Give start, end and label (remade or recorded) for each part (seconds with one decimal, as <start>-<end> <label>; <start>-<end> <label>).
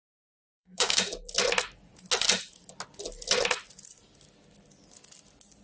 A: 0.0-1.0 remade; 1.0-5.6 recorded